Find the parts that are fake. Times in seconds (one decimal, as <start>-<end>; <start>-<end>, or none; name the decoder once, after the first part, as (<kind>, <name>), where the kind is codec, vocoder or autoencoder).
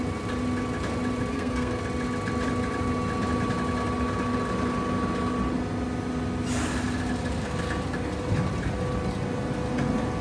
1.3-1.8 (codec, SNAC)